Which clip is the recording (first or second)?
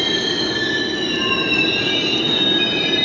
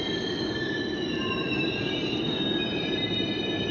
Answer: first